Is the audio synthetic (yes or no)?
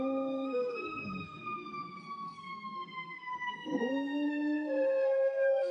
yes